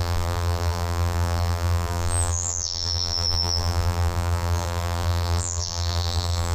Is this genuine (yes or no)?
no